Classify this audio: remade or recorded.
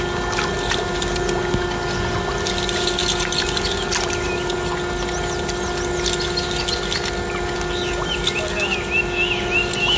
recorded